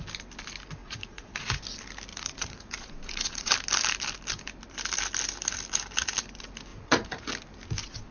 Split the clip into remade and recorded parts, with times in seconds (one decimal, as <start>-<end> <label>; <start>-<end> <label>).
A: 0.0-0.8 recorded; 0.8-1.6 remade; 1.6-2.1 recorded; 2.1-3.5 remade; 3.5-6.7 recorded; 6.7-7.3 remade; 7.3-8.1 recorded